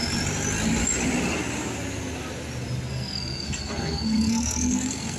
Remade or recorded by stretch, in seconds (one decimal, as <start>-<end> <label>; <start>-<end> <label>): 0.0-2.9 recorded; 2.9-5.2 remade